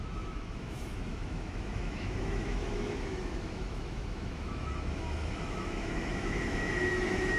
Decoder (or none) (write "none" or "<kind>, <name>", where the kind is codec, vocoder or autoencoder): autoencoder, DAC-VAE